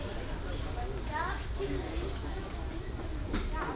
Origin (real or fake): real